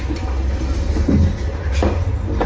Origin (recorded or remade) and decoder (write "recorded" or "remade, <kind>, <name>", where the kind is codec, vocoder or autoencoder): recorded